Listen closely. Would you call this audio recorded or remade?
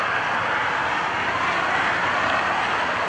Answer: recorded